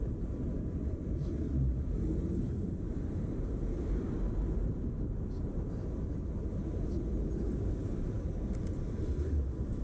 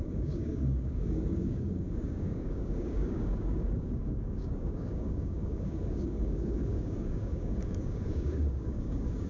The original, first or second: first